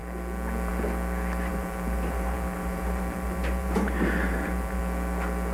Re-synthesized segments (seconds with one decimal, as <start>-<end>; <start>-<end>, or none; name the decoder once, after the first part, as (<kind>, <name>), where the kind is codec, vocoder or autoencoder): 1.5-4.8 (vocoder, BigVGAN v2)